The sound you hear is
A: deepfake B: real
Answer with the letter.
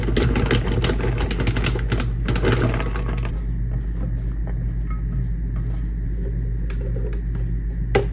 B